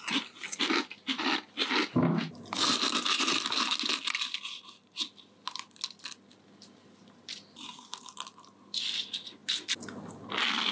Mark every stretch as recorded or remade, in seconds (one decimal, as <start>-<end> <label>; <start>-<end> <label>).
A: 0.0-10.7 recorded